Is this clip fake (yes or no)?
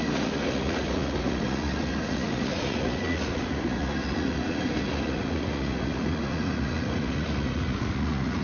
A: yes